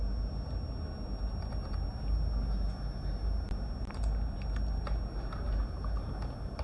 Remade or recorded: recorded